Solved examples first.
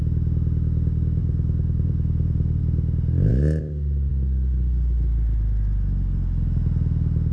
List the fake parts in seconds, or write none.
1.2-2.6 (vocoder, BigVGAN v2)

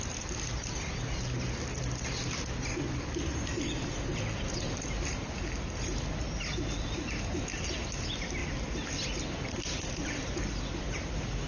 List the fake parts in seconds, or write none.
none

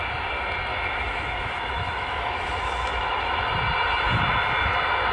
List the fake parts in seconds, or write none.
0.7-3.5 (autoencoder, DAC-VAE)

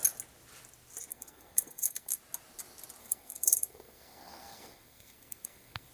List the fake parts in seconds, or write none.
1.1-2.2 (codec, SNAC); 3.0-5.9

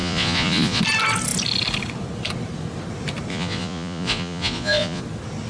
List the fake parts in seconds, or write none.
0.0-0.8 (vocoder, Vocos); 3.3-5.0

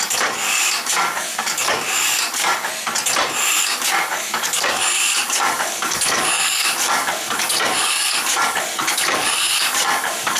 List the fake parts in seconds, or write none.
0.0-2.7 (codec, DAC); 3.6-10.4